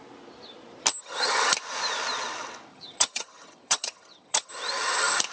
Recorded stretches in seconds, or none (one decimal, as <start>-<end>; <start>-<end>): 0.0-1.0; 1.5-2.7; 4.5-5.3